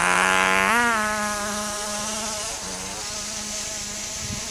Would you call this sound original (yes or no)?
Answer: yes